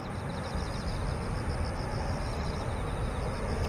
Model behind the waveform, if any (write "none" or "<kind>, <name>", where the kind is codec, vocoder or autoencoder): none